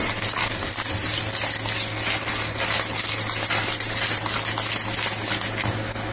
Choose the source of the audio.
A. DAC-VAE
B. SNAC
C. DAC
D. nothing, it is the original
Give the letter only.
D